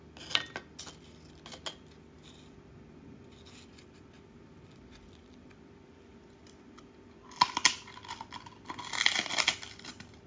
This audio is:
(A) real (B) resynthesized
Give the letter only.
A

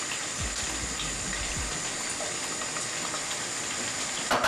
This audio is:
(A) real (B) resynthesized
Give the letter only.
A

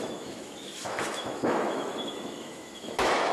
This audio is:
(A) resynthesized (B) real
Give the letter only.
A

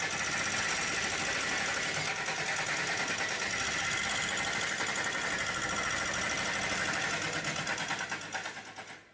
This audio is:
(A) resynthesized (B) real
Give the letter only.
B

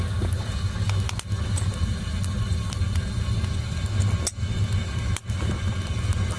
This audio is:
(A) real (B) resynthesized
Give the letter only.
A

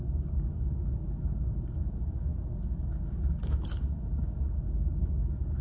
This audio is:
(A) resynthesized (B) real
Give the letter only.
A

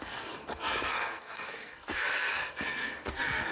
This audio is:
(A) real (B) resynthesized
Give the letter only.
B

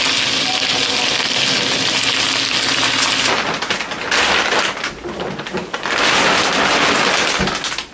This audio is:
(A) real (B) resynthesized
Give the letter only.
A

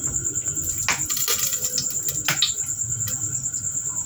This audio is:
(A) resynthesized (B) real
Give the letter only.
B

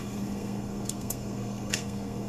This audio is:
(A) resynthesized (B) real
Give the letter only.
A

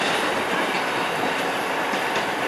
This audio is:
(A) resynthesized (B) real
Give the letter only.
B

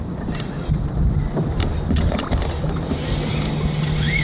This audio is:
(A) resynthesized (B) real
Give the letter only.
B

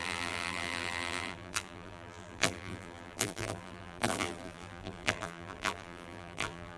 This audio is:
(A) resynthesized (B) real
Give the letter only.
A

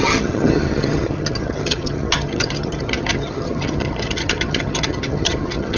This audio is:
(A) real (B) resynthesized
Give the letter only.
B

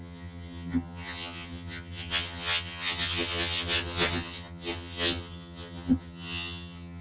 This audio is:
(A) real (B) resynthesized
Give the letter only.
B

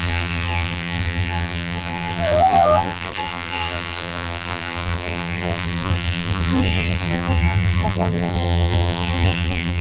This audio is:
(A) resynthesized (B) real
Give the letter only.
A